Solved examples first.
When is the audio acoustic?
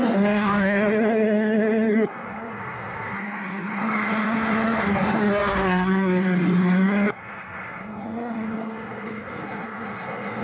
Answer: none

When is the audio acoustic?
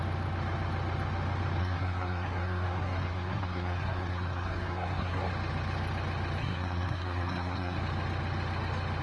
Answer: 0.0-1.6; 5.3-6.4; 7.8-9.0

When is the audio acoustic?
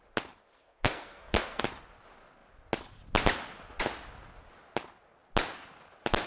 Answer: 0.0-0.4; 1.6-6.3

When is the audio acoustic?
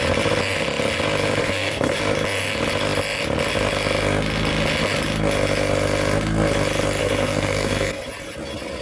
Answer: 0.0-1.4; 2.0-7.0; 8.0-8.8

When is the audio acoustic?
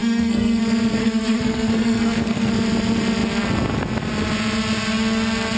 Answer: 0.6-1.0; 2.5-5.6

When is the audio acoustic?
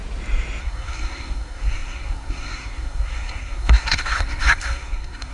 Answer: 0.0-0.6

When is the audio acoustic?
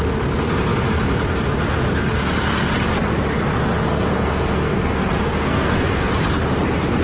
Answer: 0.0-3.9; 6.1-7.0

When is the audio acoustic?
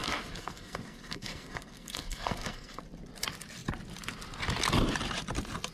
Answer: 2.8-5.7